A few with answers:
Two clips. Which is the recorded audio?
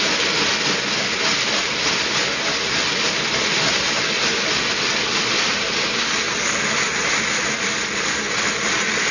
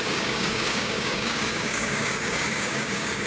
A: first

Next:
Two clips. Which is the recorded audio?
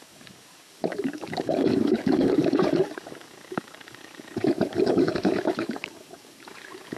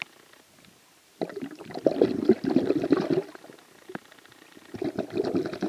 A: second